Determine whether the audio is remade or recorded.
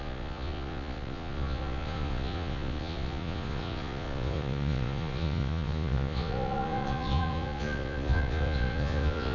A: remade